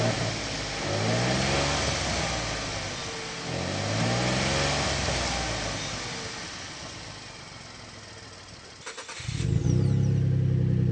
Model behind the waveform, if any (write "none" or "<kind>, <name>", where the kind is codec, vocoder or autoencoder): none